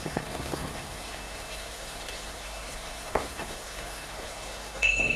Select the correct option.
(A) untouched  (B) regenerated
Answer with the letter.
B